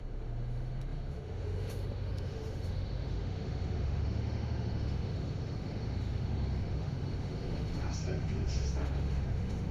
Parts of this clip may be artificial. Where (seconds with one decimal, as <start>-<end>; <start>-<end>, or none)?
0.0-9.7

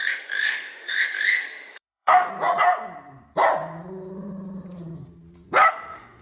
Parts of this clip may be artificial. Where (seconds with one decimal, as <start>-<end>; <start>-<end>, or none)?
0.0-2.3; 5.7-6.2